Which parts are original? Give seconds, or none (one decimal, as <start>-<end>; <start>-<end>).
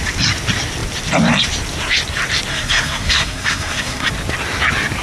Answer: 0.0-2.5; 4.1-5.0